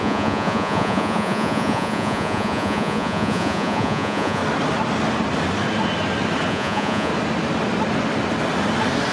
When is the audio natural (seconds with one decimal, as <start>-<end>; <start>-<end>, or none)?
4.4-6.5; 7.1-9.1